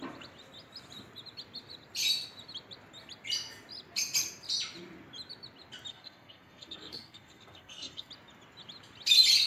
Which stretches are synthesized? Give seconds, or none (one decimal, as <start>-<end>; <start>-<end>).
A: 5.9-8.1